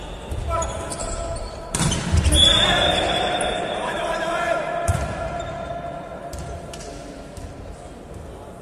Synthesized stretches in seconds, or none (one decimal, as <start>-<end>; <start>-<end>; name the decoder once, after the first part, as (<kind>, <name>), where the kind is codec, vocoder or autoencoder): 1.0-5.7 (vocoder, BigVGAN v2)